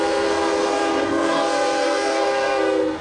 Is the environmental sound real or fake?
fake